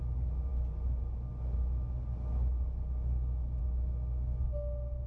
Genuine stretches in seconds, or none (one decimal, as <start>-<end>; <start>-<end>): 0.0-5.1